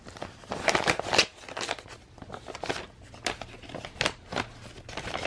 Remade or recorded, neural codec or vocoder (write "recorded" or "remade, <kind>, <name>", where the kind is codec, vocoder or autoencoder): recorded